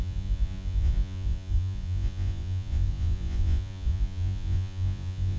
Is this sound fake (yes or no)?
yes